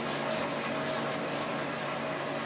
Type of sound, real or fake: real